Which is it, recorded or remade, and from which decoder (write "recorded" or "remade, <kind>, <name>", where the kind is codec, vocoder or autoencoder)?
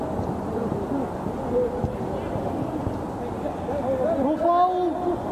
recorded